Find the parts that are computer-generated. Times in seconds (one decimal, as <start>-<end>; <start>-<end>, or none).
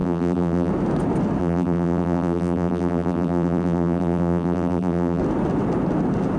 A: 0.0-0.7; 1.4-5.2